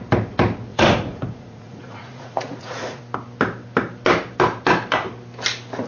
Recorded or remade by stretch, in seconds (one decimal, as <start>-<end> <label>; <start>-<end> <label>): 0.0-0.7 recorded; 0.7-3.0 remade; 3.0-5.9 recorded